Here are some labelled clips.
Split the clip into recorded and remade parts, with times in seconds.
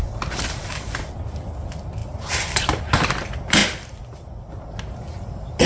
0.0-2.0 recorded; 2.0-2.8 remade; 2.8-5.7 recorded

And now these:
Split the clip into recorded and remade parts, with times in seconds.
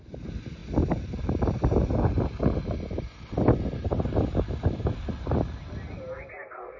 0.0-6.8 recorded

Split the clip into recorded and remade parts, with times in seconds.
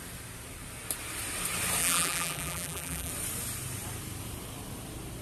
0.0-1.8 recorded; 1.8-3.1 remade; 3.1-5.2 recorded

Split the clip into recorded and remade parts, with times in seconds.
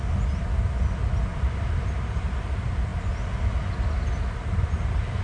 0.0-1.3 recorded; 1.3-2.2 remade; 2.2-5.2 recorded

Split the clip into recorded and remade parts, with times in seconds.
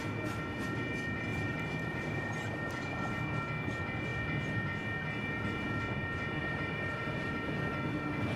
0.0-1.3 recorded; 1.3-3.2 remade; 3.2-6.4 recorded; 6.4-7.3 remade; 7.3-8.4 recorded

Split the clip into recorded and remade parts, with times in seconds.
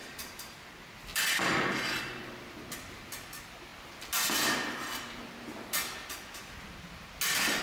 0.0-7.6 recorded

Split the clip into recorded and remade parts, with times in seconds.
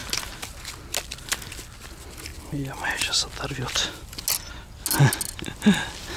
0.0-0.6 remade; 0.6-6.2 recorded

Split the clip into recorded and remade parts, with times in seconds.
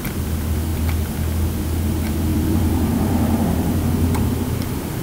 0.0-2.3 recorded; 2.3-3.7 remade; 3.7-5.0 recorded